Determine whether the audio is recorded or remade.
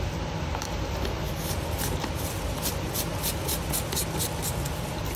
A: recorded